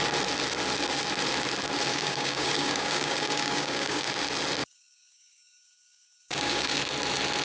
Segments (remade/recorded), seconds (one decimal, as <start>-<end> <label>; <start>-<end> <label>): 0.0-1.9 recorded; 1.9-4.1 remade; 4.1-4.6 recorded; 4.6-6.8 remade; 6.8-7.4 recorded